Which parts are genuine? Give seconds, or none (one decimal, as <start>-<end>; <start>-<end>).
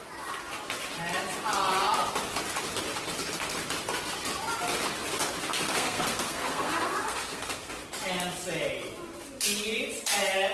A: 0.0-5.5; 7.7-10.5